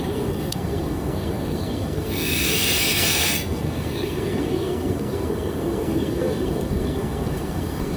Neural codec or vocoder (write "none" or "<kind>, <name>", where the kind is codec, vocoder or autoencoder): codec, SNAC